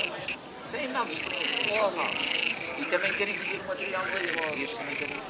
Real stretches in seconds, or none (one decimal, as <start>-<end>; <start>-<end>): 0.0-1.5; 4.2-4.7